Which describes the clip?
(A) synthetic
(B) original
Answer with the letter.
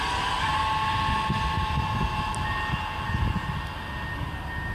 B